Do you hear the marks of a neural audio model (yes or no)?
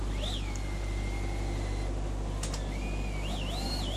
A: no